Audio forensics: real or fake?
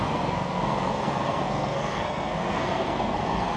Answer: fake